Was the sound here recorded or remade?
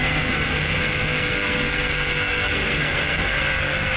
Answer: remade